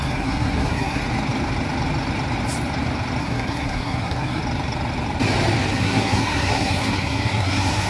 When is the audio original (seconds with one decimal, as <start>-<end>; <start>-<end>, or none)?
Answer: 1.0-3.2; 4.4-5.7